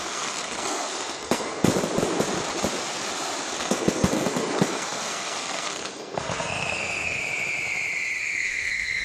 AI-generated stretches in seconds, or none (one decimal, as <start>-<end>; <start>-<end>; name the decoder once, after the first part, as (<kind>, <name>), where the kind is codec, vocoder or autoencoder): 0.0-1.7 (codec, SNAC); 3.6-7.2; 8.2-9.0